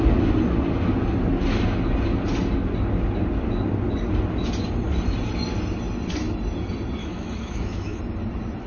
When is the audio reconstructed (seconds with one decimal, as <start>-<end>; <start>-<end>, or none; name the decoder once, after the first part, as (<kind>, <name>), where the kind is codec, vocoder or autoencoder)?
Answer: 7.0-8.0 (autoencoder, DAC-VAE)